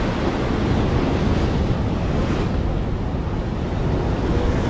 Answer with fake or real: real